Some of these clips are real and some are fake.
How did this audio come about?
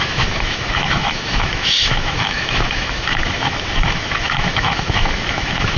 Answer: fake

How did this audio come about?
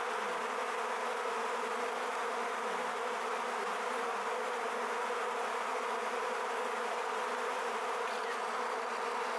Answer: real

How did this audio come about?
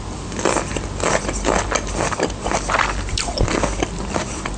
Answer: real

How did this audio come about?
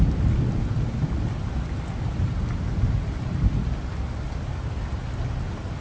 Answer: real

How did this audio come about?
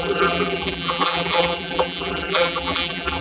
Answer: fake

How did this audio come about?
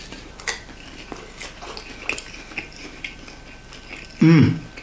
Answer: real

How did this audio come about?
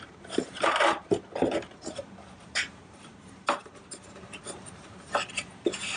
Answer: fake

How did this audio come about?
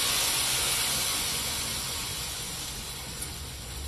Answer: fake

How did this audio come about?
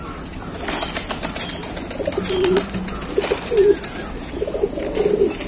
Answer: real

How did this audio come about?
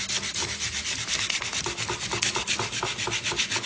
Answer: real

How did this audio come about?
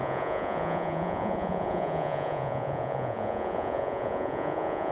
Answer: fake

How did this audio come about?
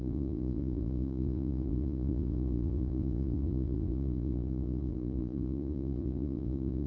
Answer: fake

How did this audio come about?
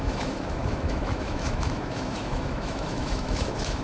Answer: fake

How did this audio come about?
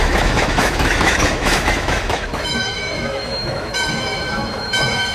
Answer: fake